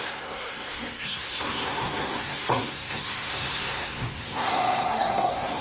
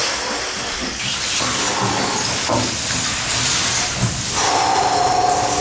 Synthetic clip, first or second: first